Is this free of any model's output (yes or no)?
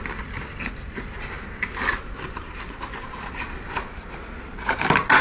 yes